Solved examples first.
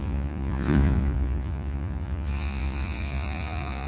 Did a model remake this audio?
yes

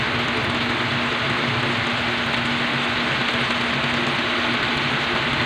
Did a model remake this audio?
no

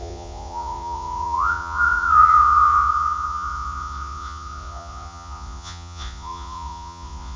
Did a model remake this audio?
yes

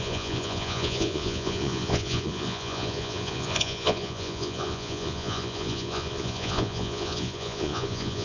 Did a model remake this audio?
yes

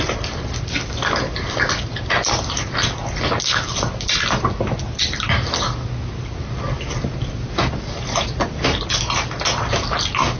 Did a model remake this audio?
no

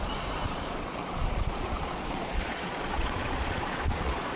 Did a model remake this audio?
yes